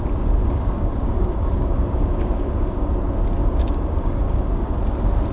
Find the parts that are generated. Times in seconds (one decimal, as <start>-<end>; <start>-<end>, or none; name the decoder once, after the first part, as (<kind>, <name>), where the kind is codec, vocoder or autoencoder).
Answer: 0.4-2.9 (codec, DAC); 3.4-4.7